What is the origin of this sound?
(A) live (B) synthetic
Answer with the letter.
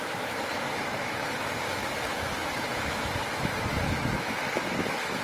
B